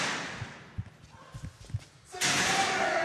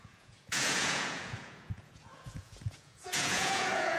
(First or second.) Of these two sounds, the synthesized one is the second